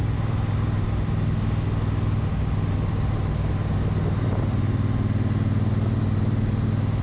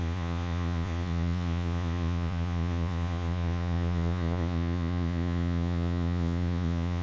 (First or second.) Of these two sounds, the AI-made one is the second